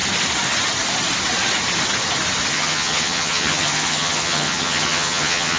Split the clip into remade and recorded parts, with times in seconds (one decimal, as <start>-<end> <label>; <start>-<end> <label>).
0.0-2.5 recorded; 2.5-5.6 remade